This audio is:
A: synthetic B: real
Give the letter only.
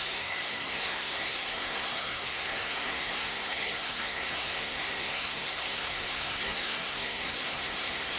A